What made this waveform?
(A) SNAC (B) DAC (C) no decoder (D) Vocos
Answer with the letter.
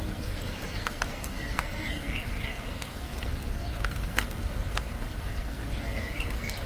A